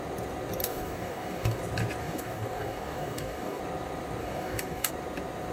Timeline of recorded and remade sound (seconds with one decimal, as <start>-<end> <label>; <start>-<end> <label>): 0.0-0.6 recorded; 0.6-1.6 remade; 1.6-2.0 recorded; 2.0-3.6 remade; 3.6-4.2 recorded; 4.2-4.9 remade; 4.9-5.5 recorded